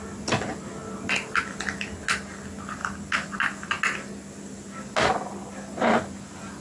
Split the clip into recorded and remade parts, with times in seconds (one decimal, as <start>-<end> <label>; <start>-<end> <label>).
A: 0.0-6.6 recorded